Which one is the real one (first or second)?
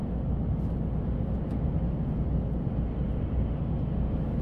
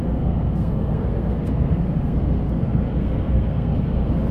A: first